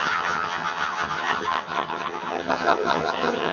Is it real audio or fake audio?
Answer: fake